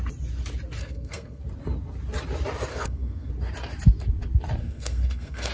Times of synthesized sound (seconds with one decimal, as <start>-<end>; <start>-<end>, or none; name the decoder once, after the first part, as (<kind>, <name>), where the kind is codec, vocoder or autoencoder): 0.8-1.4 (codec, SNAC); 2.7-3.3; 4.6-5.5